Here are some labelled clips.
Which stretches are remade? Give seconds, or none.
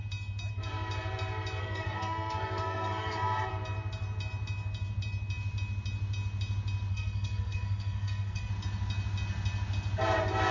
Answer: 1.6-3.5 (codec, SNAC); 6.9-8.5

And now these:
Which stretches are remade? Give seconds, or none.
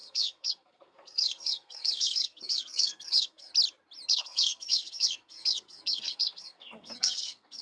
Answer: 0.0-3.5 (codec, SNAC); 4.1-7.6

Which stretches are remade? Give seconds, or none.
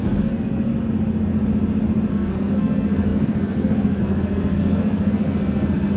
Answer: 0.0-0.7 (codec, SNAC); 2.1-6.0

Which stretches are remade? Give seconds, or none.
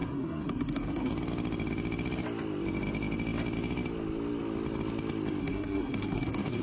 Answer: 0.0-1.1 (codec, SNAC); 5.4-6.6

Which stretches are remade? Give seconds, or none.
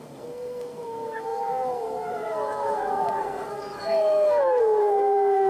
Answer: 0.0-5.5 (codec, SNAC)